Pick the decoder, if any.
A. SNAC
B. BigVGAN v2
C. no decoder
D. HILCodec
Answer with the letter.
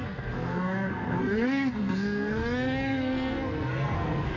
A